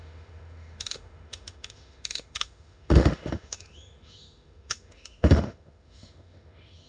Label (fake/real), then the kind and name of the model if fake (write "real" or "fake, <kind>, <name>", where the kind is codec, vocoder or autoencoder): fake, autoencoder, DAC-VAE